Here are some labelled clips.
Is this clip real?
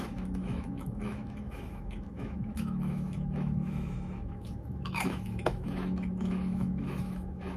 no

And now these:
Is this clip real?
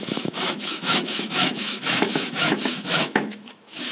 no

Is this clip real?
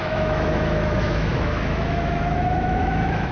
no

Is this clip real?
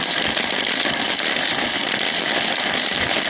yes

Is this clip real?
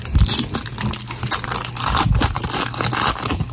yes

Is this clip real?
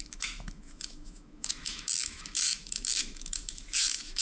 no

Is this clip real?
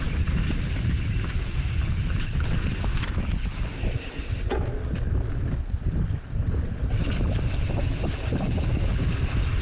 yes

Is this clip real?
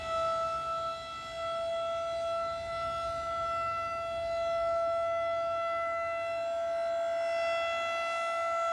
yes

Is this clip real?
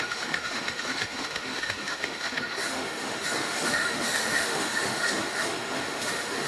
no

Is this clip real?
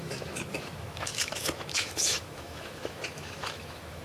no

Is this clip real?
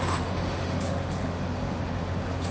no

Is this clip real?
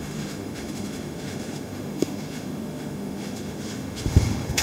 no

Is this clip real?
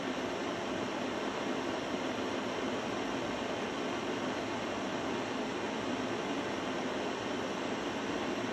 yes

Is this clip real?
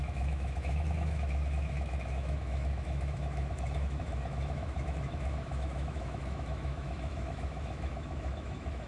no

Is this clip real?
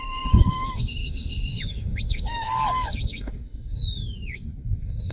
no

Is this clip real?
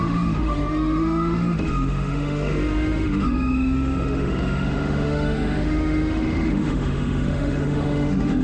no